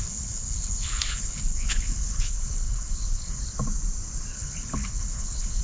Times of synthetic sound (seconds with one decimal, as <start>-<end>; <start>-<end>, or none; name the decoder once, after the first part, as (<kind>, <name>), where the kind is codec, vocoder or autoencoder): 0.0-3.4 (codec, HILCodec); 4.3-5.6